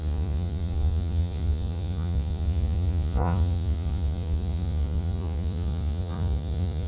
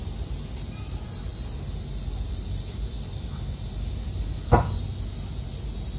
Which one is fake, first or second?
first